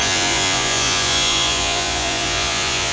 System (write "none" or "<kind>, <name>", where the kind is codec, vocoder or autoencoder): vocoder, Vocos